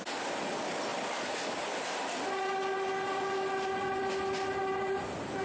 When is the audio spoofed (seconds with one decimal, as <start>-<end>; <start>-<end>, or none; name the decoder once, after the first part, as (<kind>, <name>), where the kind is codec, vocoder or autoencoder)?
none